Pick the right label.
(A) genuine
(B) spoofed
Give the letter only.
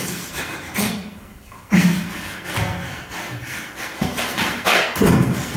B